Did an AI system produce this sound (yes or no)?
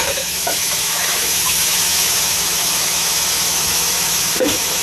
yes